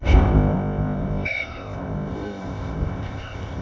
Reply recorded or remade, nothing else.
remade